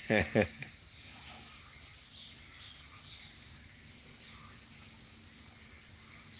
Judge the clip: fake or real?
real